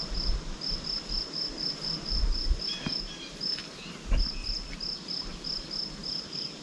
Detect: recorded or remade recorded